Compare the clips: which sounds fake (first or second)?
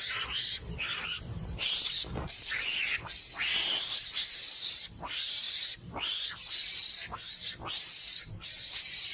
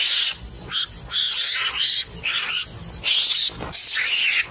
first